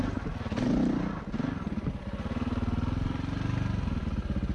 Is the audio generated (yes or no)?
no